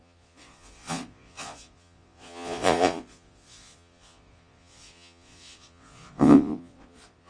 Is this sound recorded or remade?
remade